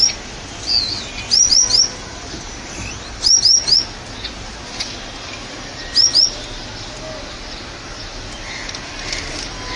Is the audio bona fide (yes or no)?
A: yes